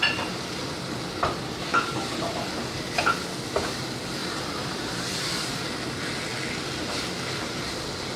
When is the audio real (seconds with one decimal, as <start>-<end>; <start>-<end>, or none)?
0.0-4.2; 5.6-8.2